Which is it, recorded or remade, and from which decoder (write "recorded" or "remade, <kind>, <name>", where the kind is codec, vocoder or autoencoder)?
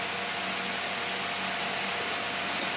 recorded